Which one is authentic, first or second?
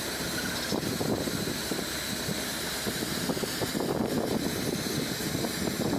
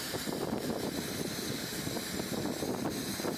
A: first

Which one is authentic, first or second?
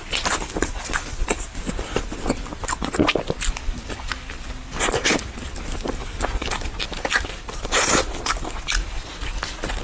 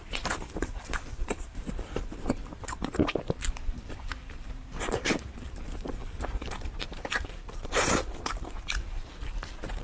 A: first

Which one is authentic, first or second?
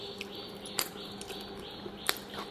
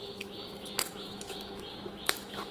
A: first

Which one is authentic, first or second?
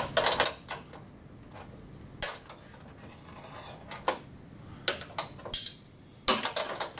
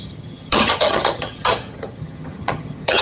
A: first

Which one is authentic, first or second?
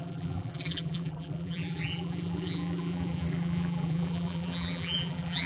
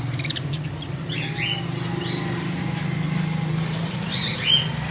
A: second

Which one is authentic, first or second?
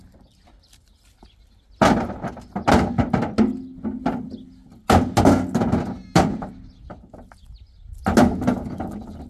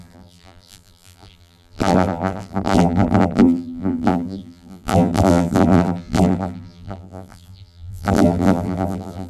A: first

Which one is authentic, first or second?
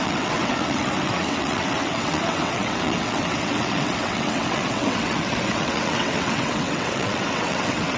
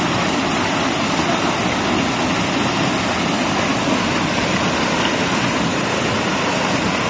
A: second